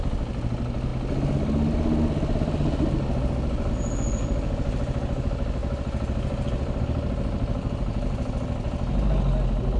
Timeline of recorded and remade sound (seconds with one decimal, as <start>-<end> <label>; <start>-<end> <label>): 0.0-9.8 recorded